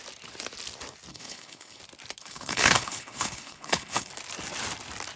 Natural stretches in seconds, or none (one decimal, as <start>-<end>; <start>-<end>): 0.0-1.1; 1.8-2.2; 4.1-5.2